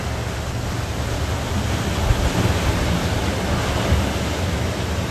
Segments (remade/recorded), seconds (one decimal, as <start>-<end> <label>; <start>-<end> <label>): 0.0-5.1 recorded